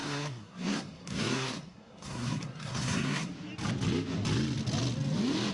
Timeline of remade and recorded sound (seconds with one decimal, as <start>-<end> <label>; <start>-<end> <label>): 0.0-3.3 remade; 3.3-5.5 recorded